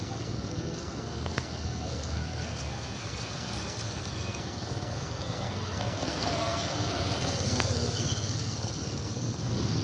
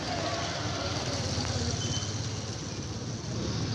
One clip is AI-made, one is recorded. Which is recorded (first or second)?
second